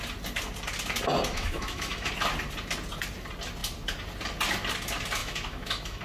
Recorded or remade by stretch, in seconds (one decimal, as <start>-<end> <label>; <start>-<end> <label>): 0.0-1.3 recorded; 1.3-2.1 remade; 2.1-5.2 recorded; 5.2-6.0 remade